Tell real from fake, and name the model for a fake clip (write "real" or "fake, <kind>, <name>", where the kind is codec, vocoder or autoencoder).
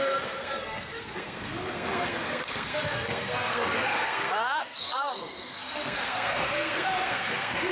fake, codec, SNAC